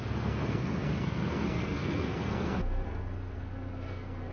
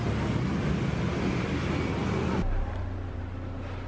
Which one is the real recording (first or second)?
second